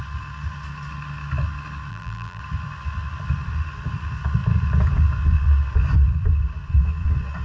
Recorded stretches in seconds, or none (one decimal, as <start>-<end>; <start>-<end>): 0.0-1.9; 2.4-7.4